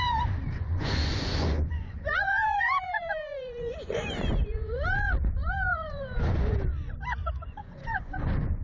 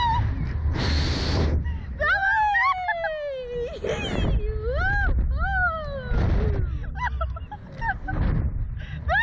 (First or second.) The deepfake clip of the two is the first